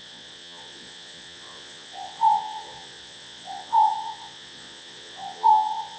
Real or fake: fake